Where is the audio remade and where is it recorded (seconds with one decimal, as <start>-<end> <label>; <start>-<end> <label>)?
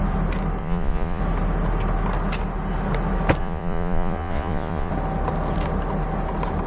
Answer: 0.0-0.6 recorded; 0.6-1.2 remade; 1.2-3.4 recorded; 3.4-4.9 remade; 4.9-6.7 recorded